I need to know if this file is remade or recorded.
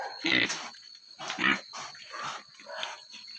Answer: recorded